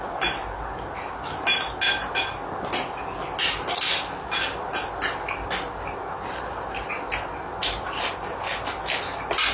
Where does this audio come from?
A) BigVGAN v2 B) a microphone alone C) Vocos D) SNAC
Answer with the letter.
B